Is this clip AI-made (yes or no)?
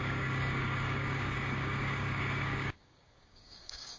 yes